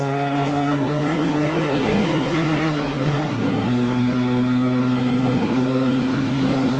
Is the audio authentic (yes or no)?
no